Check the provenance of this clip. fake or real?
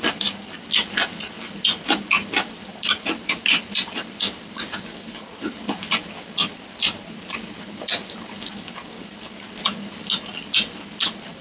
real